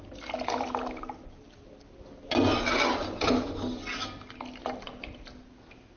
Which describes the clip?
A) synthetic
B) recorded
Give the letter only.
B